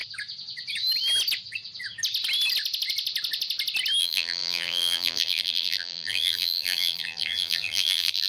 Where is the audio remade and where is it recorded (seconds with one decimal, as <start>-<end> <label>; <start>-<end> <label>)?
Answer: 0.0-4.0 recorded; 4.0-8.3 remade

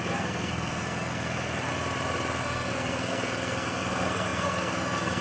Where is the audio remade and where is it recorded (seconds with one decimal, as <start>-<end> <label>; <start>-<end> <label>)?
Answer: 0.0-1.7 remade; 1.7-2.4 recorded; 2.4-5.2 remade

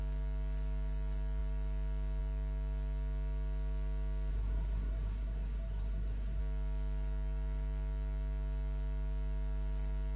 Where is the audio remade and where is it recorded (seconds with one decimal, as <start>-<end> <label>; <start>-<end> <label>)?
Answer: 0.0-4.3 recorded; 4.3-6.4 remade; 6.4-10.2 recorded

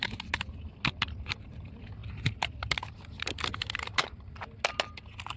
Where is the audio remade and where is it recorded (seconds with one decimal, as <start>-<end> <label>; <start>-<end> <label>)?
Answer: 0.0-5.4 recorded